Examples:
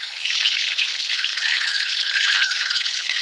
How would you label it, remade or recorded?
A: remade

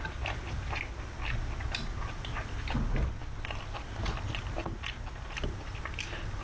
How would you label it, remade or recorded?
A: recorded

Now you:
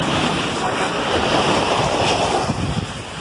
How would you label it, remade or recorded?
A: recorded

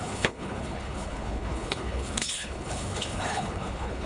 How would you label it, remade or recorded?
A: remade